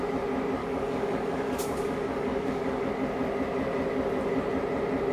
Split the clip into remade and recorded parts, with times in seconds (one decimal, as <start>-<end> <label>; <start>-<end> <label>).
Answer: 0.0-0.6 recorded; 0.6-2.9 remade; 2.9-5.1 recorded